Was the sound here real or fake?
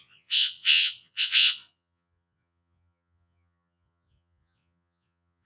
fake